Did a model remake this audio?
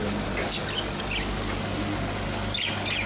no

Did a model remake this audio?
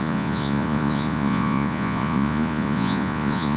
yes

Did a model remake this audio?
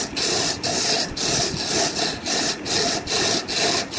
no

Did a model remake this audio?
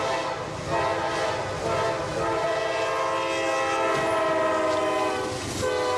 no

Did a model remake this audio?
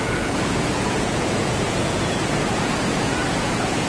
yes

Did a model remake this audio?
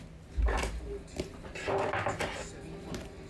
no